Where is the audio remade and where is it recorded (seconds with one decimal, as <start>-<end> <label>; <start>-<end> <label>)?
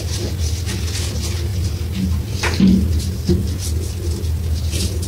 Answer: 0.0-5.1 recorded